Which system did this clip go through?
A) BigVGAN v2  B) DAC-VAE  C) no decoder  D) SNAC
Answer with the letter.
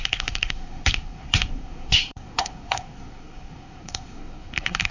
D